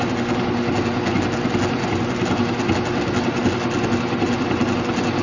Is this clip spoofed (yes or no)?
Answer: no